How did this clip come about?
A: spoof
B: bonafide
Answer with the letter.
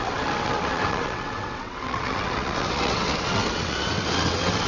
A